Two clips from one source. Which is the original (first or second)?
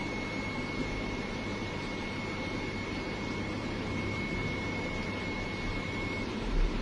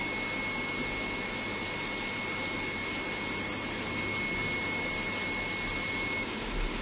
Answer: second